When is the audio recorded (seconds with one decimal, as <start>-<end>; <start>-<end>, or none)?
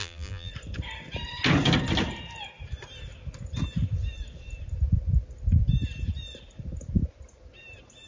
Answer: 0.5-8.1